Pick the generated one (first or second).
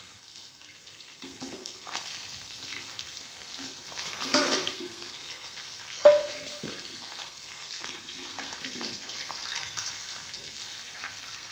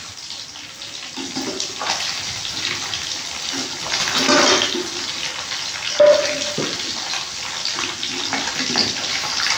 first